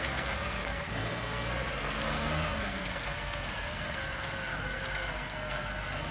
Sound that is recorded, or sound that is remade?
remade